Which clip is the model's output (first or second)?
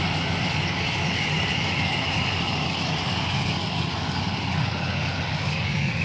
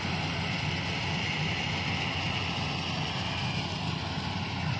first